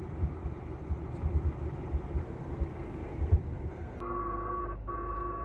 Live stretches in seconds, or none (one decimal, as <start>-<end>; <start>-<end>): 0.0-2.2; 4.6-5.4